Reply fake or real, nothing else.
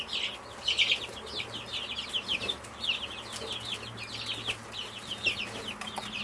real